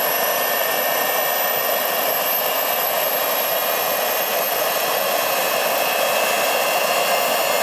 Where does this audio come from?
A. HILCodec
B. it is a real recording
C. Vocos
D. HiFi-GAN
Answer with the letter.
B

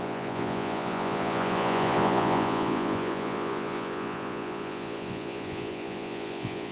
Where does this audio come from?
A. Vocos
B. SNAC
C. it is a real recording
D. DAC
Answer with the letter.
A